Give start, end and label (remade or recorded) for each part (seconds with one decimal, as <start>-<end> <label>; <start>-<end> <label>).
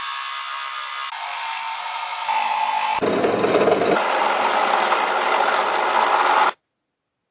0.0-1.3 recorded; 1.3-2.0 remade; 2.0-7.3 recorded